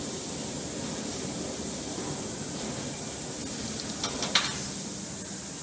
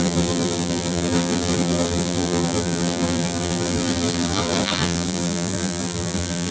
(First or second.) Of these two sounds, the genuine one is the first